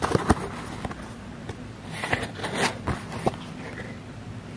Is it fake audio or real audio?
real